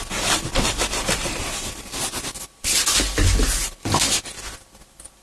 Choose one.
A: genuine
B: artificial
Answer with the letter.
A